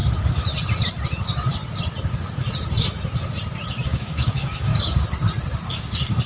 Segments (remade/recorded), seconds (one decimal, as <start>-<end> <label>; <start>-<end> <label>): 0.0-3.7 recorded; 3.7-4.7 remade; 4.7-5.7 recorded; 5.7-6.3 remade